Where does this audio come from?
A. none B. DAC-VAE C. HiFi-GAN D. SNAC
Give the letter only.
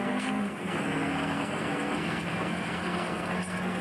D